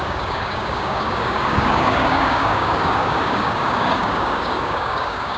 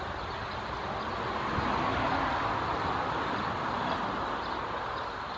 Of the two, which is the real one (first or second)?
second